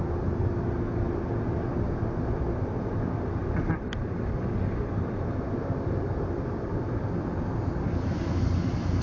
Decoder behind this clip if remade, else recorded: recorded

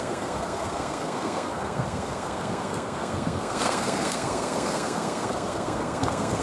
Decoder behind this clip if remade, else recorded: remade, codec, SNAC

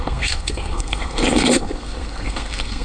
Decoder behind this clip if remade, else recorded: remade, codec, SNAC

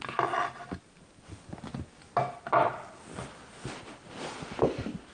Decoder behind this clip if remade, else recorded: recorded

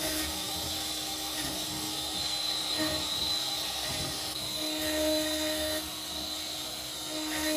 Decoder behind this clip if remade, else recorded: remade, codec, SNAC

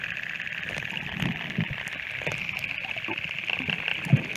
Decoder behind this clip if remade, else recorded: recorded